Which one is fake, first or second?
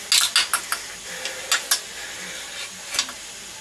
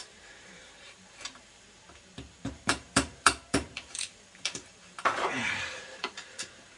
second